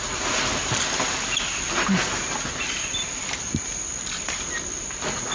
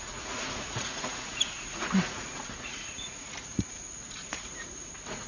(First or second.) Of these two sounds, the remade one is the second